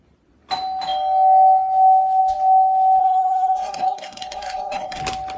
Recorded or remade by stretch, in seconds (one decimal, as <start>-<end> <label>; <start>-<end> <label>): 0.0-3.0 recorded; 3.0-5.0 remade; 5.0-5.4 recorded